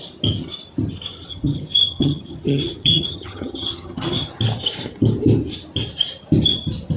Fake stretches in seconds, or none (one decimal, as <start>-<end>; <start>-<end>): 1.3-4.3